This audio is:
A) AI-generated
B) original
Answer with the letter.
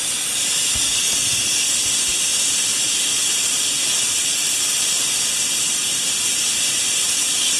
B